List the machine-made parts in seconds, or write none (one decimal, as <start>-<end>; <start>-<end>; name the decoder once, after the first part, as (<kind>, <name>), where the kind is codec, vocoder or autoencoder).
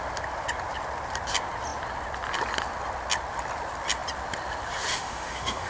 4.9-5.7 (autoencoder, DAC-VAE)